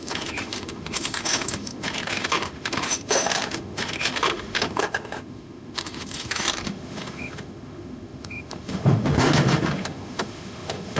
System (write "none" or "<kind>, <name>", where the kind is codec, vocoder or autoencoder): autoencoder, DAC-VAE